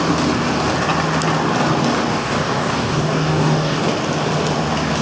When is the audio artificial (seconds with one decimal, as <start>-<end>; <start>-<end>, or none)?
2.1-3.8